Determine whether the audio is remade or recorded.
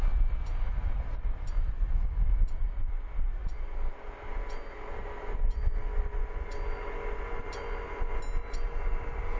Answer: recorded